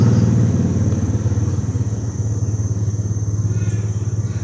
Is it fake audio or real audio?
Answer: real